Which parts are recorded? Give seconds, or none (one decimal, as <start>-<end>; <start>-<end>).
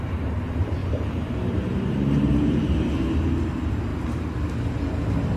0.0-0.8; 2.9-5.4